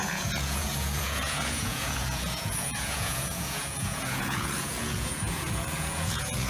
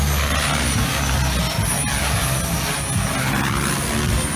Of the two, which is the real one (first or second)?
second